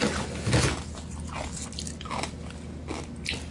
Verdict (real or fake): real